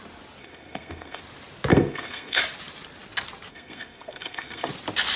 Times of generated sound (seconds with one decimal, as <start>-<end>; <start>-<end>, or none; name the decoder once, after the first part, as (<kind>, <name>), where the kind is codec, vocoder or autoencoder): 0.4-1.2 (codec, SNAC); 1.7-2.4; 3.5-4.7

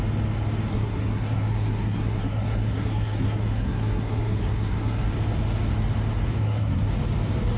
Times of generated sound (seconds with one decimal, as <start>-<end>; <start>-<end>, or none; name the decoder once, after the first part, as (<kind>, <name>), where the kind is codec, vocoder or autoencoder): 0.7-5.1 (codec, SNAC); 6.4-6.9